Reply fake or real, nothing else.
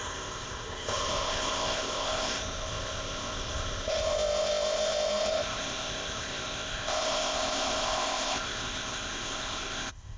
fake